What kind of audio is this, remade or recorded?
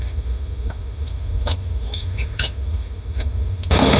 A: remade